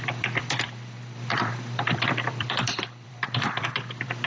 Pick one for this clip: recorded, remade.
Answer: remade